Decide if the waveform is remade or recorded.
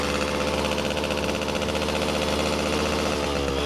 recorded